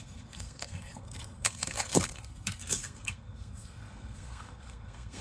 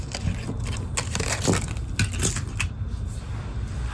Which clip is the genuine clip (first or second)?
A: second